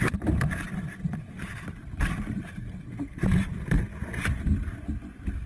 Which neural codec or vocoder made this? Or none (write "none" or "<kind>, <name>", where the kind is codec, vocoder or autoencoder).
vocoder, BigVGAN v2